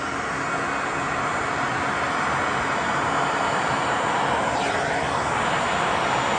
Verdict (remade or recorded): recorded